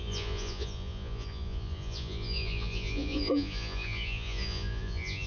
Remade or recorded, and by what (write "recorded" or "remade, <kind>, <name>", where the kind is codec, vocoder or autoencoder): remade, vocoder, Vocos